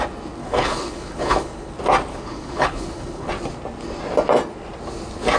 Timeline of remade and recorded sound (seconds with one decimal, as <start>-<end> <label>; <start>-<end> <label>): 0.0-0.4 recorded; 0.4-1.7 remade; 1.7-2.1 recorded; 2.1-3.3 remade; 3.3-5.4 recorded